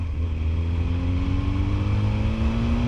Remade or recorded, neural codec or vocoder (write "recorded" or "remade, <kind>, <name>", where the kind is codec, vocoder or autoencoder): recorded